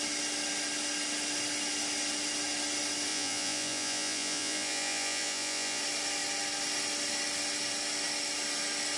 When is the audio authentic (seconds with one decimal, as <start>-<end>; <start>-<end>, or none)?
0.0-3.1; 5.8-9.0